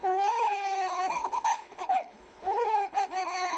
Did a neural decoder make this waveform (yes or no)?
yes